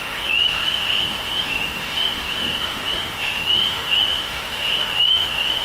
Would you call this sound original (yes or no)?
no